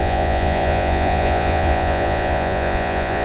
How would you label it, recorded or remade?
remade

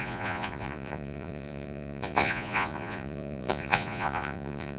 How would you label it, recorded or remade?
remade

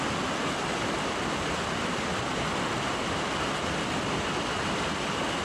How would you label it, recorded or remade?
recorded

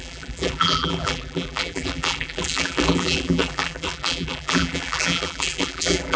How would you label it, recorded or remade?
remade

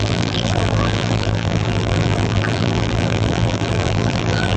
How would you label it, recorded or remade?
remade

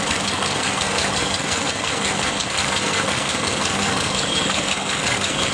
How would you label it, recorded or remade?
remade